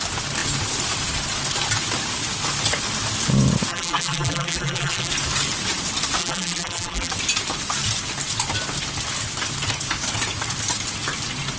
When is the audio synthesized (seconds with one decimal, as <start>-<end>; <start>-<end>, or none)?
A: 3.7-5.1; 6.2-7.1